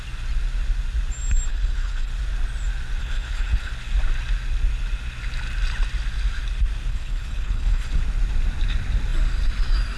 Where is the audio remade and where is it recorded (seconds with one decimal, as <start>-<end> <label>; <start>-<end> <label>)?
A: 0.0-1.5 recorded; 1.5-2.1 remade; 2.1-3.0 recorded; 3.0-3.7 remade; 3.7-6.9 recorded; 6.9-8.0 remade; 8.0-10.0 recorded